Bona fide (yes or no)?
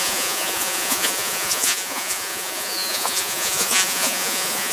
no